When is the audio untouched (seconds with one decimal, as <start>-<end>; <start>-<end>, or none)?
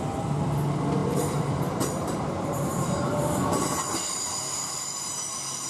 0.0-1.0; 4.4-5.7